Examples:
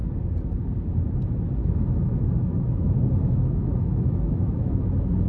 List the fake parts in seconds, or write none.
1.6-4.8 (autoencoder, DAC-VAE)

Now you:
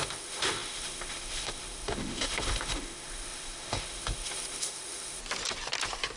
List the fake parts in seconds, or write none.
0.0-5.2 (autoencoder, DAC-VAE)

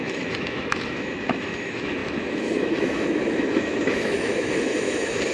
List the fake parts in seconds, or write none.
0.0-5.3 (autoencoder, DAC-VAE)

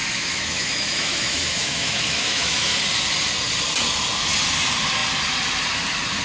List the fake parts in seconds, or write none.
0.0-2.8 (autoencoder, DAC-VAE)